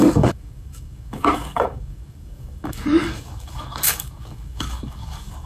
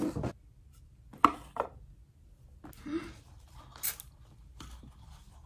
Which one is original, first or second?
second